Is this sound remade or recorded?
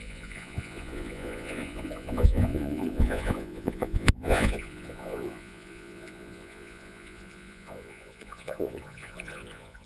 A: remade